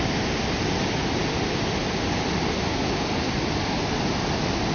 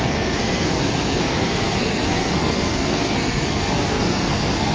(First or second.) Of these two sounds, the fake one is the second